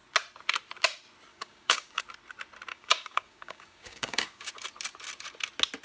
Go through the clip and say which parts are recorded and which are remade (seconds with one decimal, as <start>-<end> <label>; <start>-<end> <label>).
0.0-1.3 recorded; 1.3-2.0 remade; 2.0-2.7 recorded; 2.7-4.5 remade; 4.5-5.8 recorded